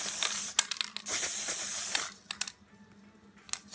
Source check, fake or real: real